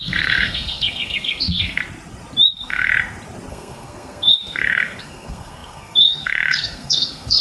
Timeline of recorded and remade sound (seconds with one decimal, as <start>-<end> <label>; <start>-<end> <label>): 0.0-1.8 remade; 1.8-2.5 recorded; 2.5-2.9 remade; 2.9-3.5 recorded; 3.5-7.4 remade